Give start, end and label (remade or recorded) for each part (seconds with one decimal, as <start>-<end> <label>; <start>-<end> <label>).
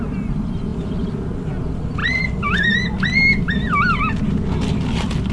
0.0-5.3 recorded